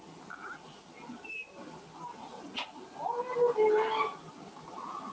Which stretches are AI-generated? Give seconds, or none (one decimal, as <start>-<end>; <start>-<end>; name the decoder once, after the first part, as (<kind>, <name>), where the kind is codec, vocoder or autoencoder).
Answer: none